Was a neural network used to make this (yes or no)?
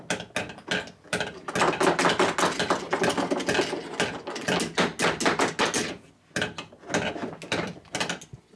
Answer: no